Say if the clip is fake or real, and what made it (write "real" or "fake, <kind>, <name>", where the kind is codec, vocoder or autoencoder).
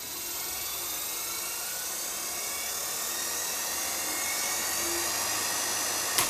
real